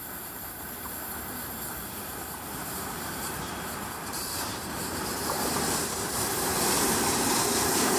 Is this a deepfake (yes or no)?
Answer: yes